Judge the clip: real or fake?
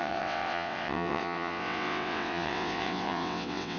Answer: fake